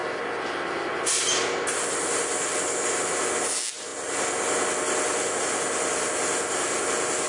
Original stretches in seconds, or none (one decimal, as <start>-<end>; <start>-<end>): 0.0-7.3